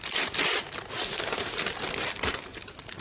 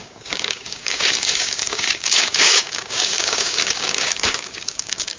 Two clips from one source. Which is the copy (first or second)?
second